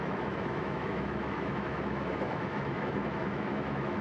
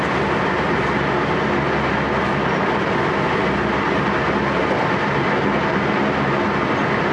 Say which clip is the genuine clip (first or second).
second